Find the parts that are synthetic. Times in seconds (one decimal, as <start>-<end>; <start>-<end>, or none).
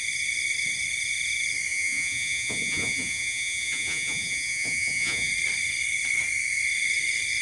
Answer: 1.7-5.3